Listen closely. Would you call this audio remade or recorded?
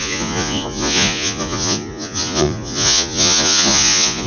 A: remade